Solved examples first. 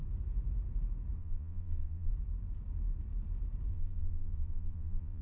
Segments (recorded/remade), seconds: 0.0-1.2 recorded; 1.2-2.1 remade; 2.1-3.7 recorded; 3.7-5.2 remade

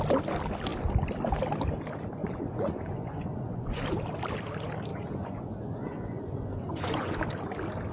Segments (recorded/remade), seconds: 0.0-2.2 recorded; 2.2-3.8 remade; 3.8-4.9 recorded; 4.9-7.1 remade; 7.1-7.9 recorded

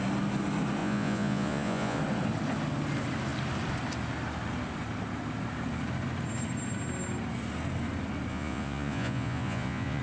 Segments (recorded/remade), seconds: 0.0-0.8 recorded; 0.8-2.0 remade; 2.0-8.3 recorded; 8.3-10.0 remade

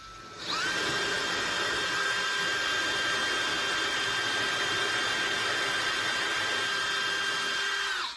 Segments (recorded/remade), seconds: 0.0-8.2 recorded